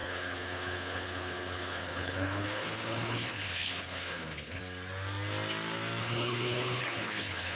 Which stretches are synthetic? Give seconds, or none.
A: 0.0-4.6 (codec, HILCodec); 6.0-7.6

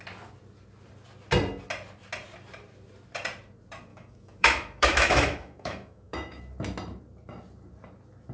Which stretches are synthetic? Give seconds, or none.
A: 3.9-6.4 (autoencoder, DAC-VAE)

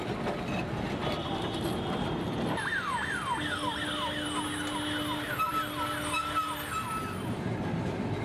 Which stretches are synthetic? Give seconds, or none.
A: 1.0-2.1 (vocoder, BigVGAN v2)

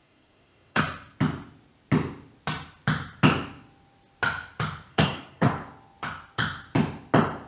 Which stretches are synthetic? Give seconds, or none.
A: 0.0-0.8 (codec, SNAC); 4.9-5.5

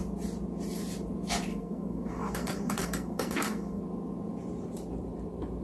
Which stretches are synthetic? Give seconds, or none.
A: 1.5-3.8 (codec, SNAC)

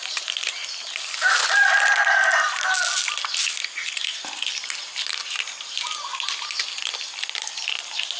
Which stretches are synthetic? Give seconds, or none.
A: 0.0-0.4 (vocoder, BigVGAN v2); 5.3-6.1

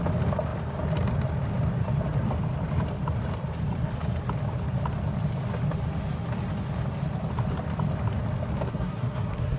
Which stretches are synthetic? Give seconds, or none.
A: 8.7-9.6 (codec, SNAC)

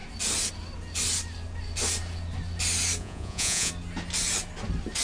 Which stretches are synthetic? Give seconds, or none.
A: 3.0-3.7 (vocoder, Vocos)